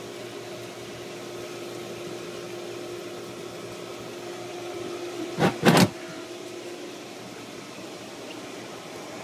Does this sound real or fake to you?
real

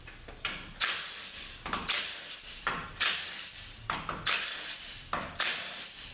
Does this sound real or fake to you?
fake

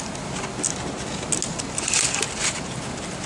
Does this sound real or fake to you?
real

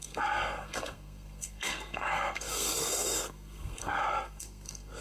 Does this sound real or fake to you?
fake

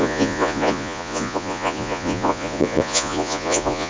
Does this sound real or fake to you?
fake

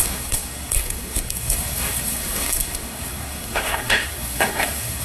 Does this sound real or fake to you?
fake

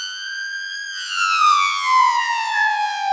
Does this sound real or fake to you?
fake